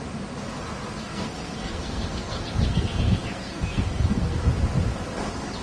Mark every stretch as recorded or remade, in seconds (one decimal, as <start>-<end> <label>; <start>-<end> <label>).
0.0-1.0 recorded; 1.0-4.4 remade; 4.4-5.6 recorded